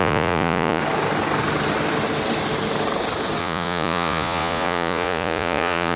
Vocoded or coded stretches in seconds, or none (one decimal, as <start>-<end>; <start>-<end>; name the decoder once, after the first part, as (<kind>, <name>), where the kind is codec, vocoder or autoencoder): 0.0-0.8 (vocoder, Vocos); 3.4-6.0